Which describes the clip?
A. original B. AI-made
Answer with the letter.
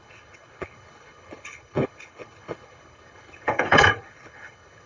B